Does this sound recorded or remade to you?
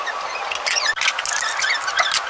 recorded